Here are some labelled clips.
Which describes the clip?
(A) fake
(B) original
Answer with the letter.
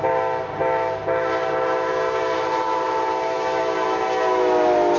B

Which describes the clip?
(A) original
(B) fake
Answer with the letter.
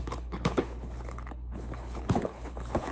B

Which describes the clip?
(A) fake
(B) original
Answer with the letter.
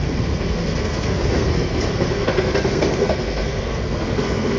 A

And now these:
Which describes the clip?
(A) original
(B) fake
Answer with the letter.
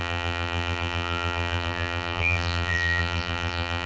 B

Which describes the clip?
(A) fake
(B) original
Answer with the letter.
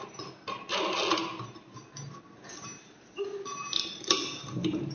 B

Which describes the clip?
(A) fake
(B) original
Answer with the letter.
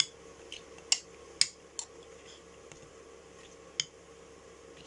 B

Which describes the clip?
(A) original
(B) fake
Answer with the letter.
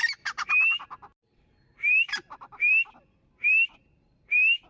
A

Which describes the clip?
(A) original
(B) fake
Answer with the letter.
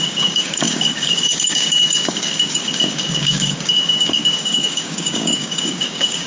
B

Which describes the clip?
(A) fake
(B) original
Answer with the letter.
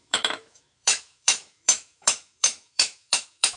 A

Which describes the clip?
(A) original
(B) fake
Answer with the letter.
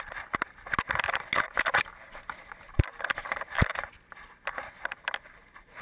A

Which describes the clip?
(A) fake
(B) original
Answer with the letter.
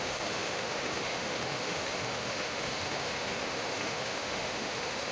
A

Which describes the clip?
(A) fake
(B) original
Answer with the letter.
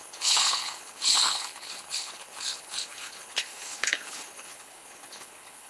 A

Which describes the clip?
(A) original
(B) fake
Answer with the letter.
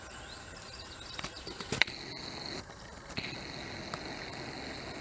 A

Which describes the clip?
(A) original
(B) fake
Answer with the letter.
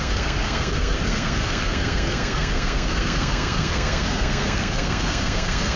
B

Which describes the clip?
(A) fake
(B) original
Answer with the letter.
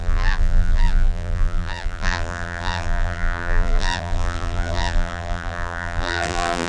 A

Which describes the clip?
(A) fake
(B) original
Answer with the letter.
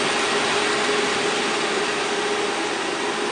B